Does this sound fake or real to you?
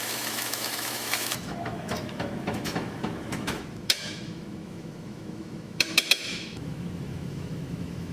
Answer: fake